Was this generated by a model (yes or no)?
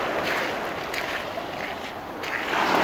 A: no